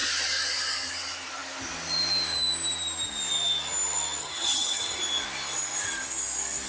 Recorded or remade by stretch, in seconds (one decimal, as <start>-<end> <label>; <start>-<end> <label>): 0.0-4.2 recorded; 4.2-5.0 remade; 5.0-6.7 recorded